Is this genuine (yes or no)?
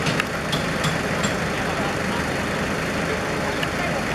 yes